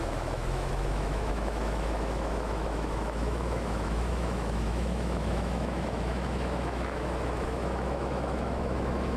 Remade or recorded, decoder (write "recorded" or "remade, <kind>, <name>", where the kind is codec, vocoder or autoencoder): remade, autoencoder, DAC-VAE